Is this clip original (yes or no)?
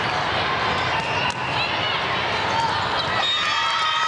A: yes